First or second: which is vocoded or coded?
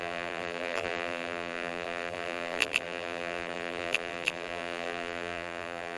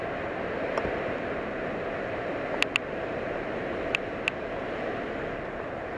first